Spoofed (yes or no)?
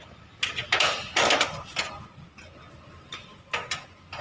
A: no